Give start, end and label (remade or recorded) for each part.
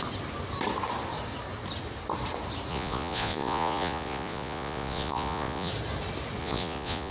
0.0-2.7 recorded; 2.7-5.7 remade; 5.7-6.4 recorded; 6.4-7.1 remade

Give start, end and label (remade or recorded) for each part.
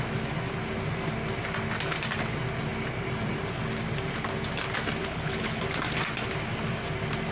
0.0-5.0 recorded; 5.0-5.6 remade; 5.6-7.3 recorded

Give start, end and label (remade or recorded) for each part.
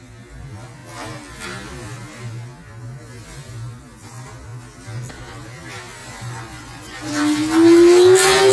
0.0-6.0 recorded; 6.0-7.1 remade; 7.1-8.5 recorded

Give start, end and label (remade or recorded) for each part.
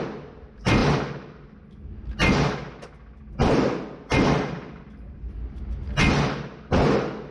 0.0-7.3 recorded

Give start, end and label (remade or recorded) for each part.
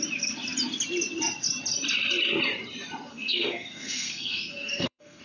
0.0-3.1 recorded; 3.1-5.2 remade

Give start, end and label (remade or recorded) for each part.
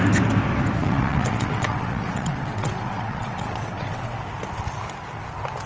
0.0-0.8 recorded; 0.8-4.2 remade; 4.2-5.7 recorded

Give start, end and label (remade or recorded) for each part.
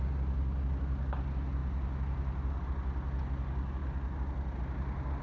0.0-5.2 recorded